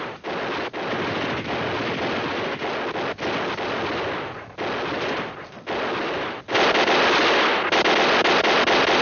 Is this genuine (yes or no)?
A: yes